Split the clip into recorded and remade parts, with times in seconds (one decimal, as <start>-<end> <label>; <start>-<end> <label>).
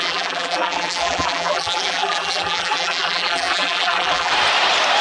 0.0-4.3 remade; 4.3-5.0 recorded